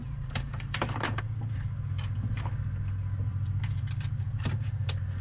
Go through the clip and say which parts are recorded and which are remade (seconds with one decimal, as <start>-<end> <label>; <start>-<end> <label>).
0.0-1.2 remade; 1.2-3.3 recorded; 3.3-4.4 remade; 4.4-5.2 recorded